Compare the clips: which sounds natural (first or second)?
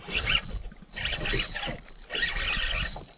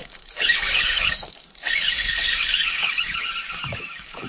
first